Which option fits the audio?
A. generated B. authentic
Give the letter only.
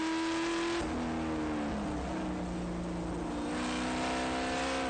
B